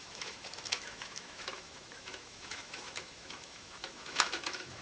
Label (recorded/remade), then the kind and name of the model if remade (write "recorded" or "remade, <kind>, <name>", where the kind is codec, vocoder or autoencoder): remade, autoencoder, DAC-VAE